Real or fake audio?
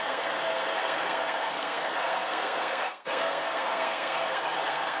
fake